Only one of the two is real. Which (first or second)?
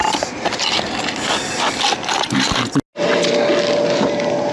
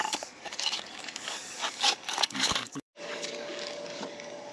first